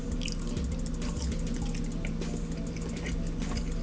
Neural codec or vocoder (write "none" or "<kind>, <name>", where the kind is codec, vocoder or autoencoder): none